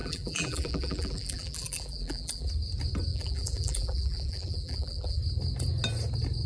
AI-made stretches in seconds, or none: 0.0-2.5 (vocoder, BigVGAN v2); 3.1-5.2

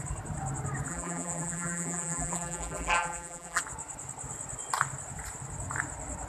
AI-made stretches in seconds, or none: 0.9-3.6 (vocoder, BigVGAN v2)

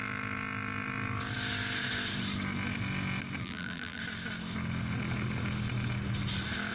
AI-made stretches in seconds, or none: 3.4-4.0 (vocoder, BigVGAN v2)

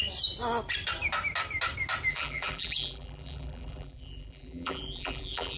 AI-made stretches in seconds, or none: 2.1-5.6 (vocoder, BigVGAN v2)

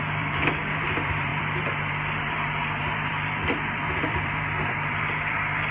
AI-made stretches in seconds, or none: 0.0-5.7 (vocoder, BigVGAN v2)

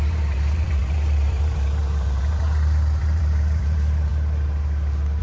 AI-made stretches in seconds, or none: 0.0-4.1 (vocoder, BigVGAN v2)